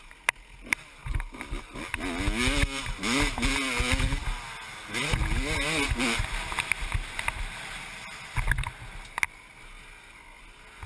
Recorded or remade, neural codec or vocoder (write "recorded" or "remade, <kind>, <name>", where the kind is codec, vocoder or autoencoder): recorded